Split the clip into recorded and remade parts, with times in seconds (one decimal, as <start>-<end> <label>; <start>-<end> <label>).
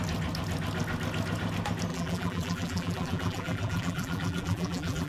0.0-1.9 recorded; 1.9-5.1 remade